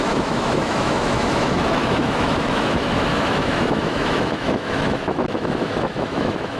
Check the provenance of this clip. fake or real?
fake